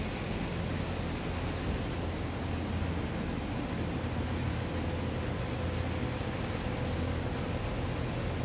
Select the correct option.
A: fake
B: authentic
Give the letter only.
B